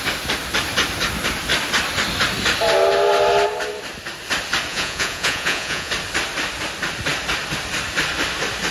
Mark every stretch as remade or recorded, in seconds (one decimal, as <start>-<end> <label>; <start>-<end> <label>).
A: 0.0-4.7 recorded; 4.7-5.9 remade; 5.9-8.7 recorded